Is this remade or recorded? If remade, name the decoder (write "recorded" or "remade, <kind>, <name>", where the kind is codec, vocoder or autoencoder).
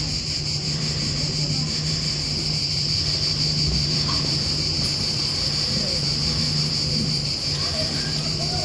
remade, vocoder, BigVGAN v2